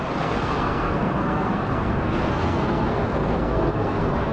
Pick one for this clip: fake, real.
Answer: fake